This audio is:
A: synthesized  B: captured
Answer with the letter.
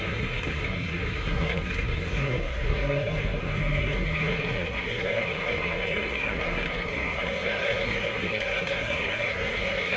A